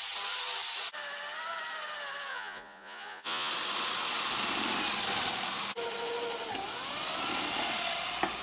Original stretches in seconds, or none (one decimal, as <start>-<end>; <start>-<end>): 0.0-2.3; 3.5-8.4